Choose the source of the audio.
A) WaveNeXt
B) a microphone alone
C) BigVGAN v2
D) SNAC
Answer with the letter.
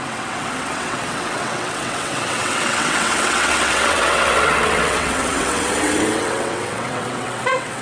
A